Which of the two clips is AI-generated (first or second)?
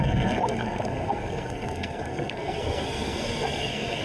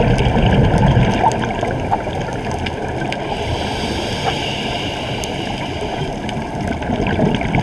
first